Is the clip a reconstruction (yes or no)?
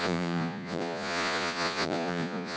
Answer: yes